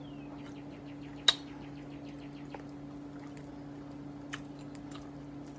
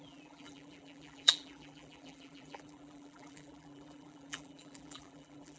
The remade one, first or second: second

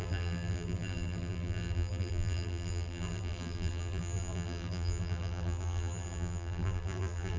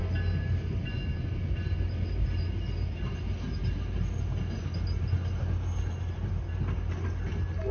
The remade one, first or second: first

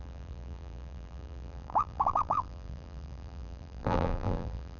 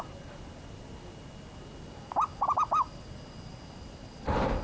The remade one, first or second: first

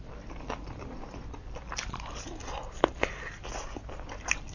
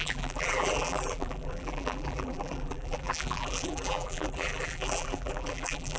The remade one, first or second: second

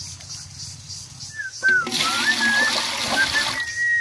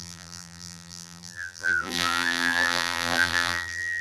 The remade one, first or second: second